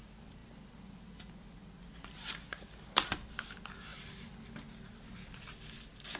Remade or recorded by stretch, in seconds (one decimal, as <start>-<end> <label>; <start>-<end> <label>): 0.0-6.2 recorded